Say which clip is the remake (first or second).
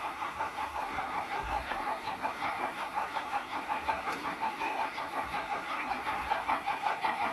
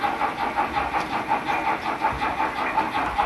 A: first